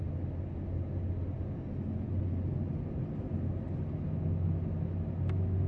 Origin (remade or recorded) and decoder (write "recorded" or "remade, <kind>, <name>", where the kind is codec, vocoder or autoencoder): recorded